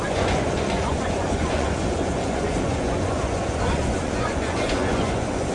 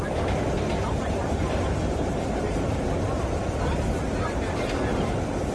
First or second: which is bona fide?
second